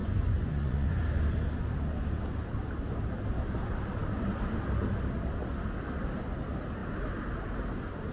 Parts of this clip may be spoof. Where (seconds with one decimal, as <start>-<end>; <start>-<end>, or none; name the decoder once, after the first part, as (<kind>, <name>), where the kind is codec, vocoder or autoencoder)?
0.0-1.0 (vocoder, Vocos)